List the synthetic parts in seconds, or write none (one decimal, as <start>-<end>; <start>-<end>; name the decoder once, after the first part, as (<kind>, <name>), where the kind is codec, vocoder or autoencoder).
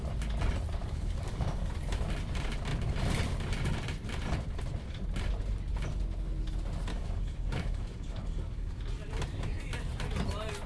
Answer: 0.8-1.7 (codec, DAC); 6.9-8.8